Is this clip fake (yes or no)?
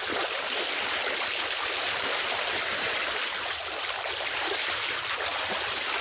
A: no